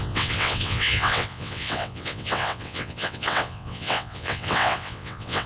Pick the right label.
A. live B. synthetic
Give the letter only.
B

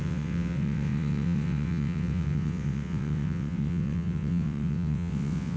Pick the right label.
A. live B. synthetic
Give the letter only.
B